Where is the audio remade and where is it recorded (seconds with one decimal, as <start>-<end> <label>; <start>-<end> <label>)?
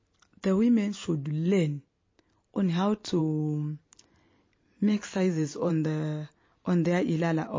0.0-4.7 recorded; 4.7-5.7 remade; 5.7-7.6 recorded